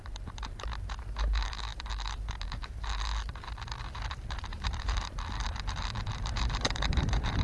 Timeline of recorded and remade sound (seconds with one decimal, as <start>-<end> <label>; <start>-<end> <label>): 0.0-7.4 remade